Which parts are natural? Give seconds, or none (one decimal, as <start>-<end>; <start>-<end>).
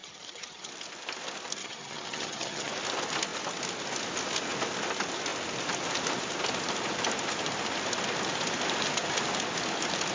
0.7-1.6; 2.7-10.1